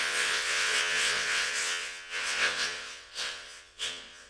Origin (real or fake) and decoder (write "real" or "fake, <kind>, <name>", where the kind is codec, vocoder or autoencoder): fake, vocoder, WaveNeXt